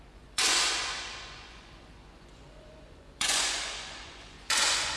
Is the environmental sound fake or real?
fake